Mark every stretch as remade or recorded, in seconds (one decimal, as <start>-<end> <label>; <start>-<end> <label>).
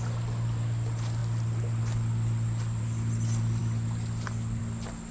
0.0-5.1 recorded